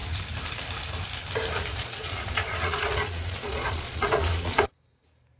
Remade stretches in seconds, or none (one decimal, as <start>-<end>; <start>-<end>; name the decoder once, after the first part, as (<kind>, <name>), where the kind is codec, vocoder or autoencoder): 1.7-4.6 (vocoder, Vocos)